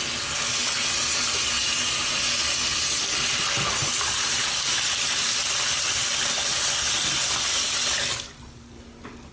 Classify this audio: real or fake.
real